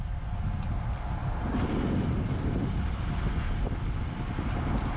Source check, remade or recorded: recorded